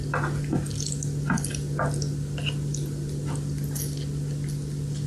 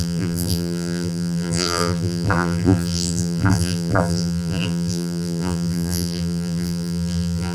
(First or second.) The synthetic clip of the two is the second